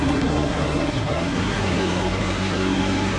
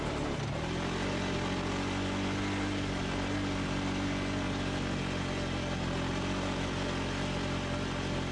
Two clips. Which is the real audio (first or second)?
second